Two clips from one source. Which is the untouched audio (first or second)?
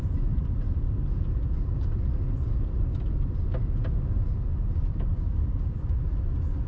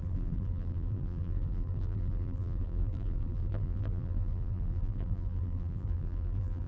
first